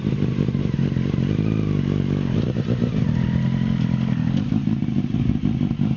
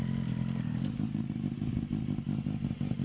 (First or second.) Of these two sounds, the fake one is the first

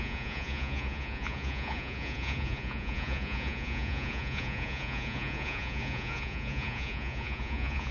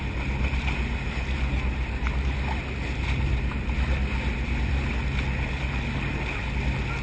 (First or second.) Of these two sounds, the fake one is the first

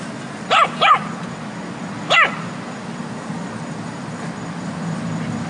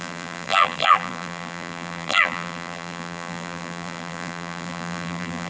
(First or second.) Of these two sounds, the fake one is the second